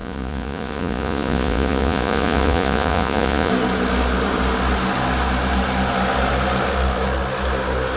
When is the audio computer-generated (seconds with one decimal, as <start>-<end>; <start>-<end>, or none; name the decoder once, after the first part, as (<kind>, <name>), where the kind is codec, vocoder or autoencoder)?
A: 0.0-3.5 (vocoder, Vocos)